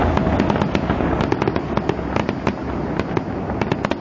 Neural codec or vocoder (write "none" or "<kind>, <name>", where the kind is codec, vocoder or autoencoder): none